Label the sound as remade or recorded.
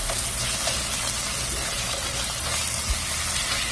recorded